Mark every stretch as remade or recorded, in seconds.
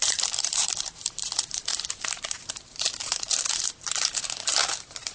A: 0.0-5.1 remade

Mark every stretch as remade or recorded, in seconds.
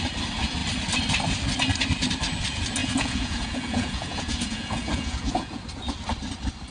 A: 0.0-2.8 recorded; 2.8-5.6 remade; 5.6-6.7 recorded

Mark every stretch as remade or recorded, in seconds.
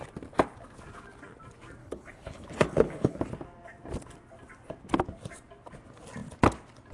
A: 0.0-1.8 recorded; 1.8-3.2 remade; 3.2-6.9 recorded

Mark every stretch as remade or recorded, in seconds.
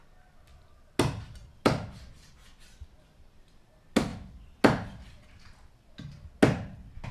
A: 0.0-7.1 recorded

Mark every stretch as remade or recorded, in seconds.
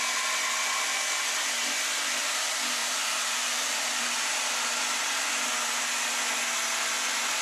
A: 0.0-2.8 recorded; 2.8-4.3 remade; 4.3-7.4 recorded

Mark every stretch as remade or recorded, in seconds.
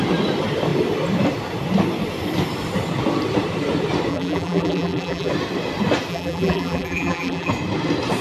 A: 0.0-4.1 recorded; 4.1-5.3 remade; 5.3-6.1 recorded; 6.1-7.5 remade; 7.5-8.2 recorded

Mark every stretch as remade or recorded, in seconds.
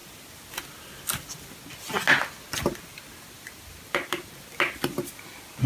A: 0.0-5.7 recorded